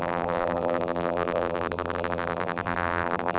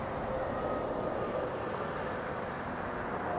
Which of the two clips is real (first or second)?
second